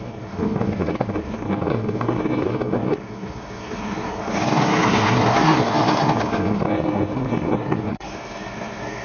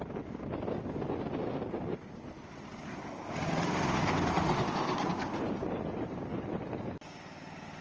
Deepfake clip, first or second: first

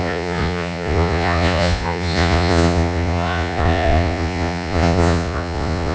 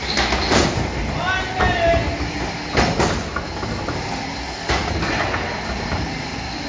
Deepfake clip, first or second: first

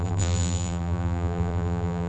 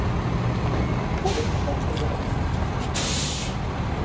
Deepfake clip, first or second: first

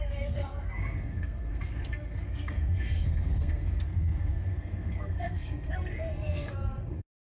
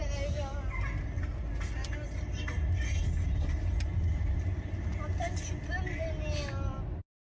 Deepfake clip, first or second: first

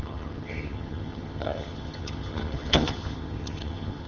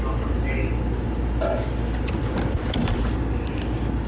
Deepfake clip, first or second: first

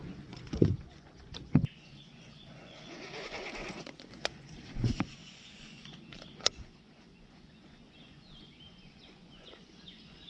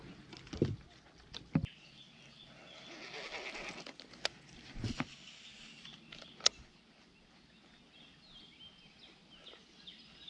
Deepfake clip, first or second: first